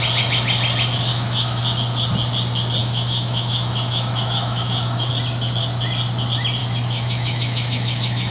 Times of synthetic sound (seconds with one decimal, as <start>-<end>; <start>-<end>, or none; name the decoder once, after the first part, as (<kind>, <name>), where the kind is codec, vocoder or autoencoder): 1.1-1.6 (autoencoder, DAC-VAE); 2.8-5.1; 6.6-8.3